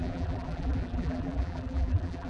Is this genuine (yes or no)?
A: no